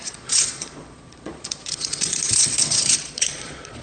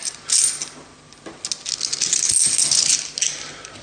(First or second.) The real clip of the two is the second